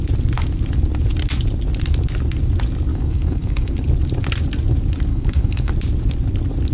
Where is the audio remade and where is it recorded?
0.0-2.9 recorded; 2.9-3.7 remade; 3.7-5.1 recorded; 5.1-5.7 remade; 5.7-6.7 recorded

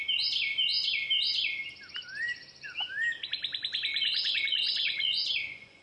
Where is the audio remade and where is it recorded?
0.0-3.9 recorded; 3.9-5.8 remade